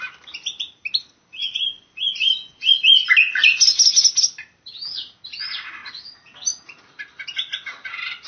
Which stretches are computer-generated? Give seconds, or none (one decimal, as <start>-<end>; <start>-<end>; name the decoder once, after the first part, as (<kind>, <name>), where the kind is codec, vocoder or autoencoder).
1.4-2.7 (vocoder, Vocos)